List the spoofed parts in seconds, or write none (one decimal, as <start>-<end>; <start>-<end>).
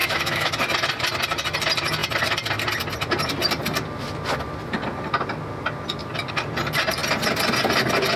0.0-0.5